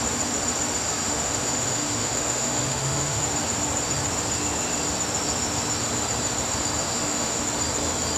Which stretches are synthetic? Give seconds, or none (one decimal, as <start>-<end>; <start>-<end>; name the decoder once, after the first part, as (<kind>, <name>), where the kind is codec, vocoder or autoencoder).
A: 1.0-3.2 (autoencoder, DAC-VAE); 6.8-7.4